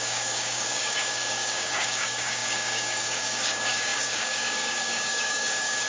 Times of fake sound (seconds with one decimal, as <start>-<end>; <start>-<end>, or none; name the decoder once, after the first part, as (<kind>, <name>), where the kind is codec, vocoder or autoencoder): 0.0-5.9 (codec, DAC)